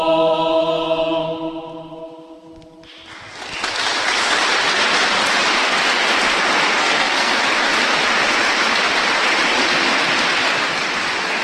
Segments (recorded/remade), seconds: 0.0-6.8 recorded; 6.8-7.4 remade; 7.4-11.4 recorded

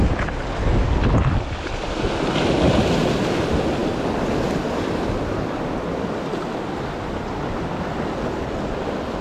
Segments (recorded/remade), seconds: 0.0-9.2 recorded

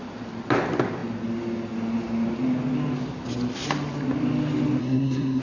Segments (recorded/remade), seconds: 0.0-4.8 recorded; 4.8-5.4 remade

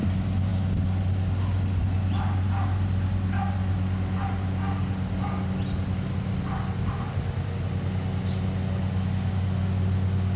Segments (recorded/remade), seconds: 0.0-10.4 recorded

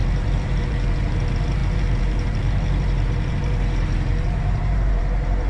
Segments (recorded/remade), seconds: 0.0-5.5 remade